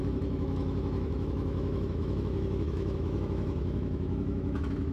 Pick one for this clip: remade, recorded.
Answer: remade